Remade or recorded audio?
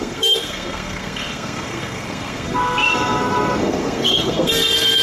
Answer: remade